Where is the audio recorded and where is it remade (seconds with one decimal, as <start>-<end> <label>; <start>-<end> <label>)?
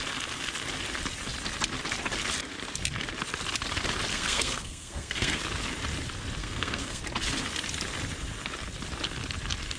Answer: 0.0-4.1 recorded; 4.1-5.4 remade; 5.4-6.4 recorded; 6.4-7.0 remade; 7.0-9.8 recorded